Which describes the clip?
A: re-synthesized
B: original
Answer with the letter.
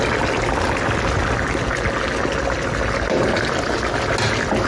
B